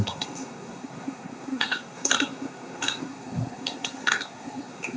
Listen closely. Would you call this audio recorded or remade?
remade